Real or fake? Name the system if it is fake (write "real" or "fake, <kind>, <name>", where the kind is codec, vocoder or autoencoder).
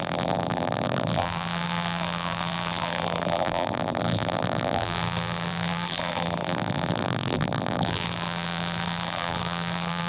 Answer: fake, vocoder, BigVGAN v2